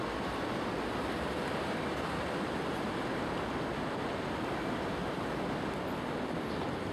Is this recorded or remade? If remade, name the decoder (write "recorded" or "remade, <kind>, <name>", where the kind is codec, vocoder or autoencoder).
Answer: recorded